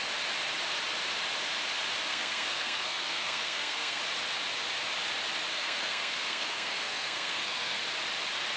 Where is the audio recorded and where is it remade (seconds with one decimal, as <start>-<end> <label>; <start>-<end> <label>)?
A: 0.0-2.1 recorded; 2.1-4.0 remade; 4.0-5.5 recorded; 5.5-7.8 remade; 7.8-8.6 recorded